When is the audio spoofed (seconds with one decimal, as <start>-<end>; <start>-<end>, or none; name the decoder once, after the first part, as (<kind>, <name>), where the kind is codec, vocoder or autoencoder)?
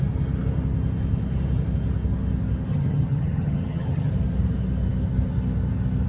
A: 2.7-4.1 (vocoder, HiFi-GAN)